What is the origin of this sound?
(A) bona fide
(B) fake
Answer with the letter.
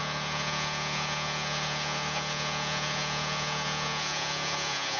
B